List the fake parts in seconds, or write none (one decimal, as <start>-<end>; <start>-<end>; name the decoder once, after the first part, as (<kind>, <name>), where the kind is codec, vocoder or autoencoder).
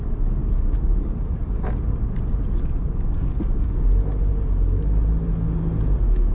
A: none